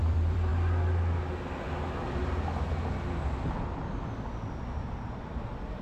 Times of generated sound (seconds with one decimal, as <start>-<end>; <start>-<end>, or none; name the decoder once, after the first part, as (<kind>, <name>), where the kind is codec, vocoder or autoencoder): 0.0-0.5 (vocoder, BigVGAN v2); 4.0-5.8